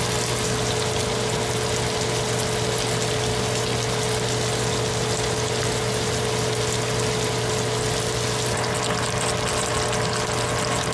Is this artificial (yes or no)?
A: no